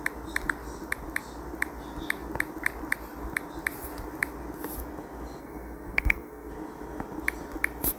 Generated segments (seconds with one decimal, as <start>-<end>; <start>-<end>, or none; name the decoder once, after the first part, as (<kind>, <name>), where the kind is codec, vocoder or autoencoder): 5.4-6.5 (codec, SNAC)